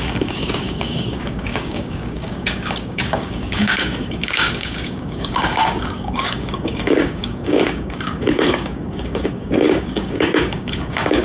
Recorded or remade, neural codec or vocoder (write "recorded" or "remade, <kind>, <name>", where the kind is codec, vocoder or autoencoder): remade, codec, DAC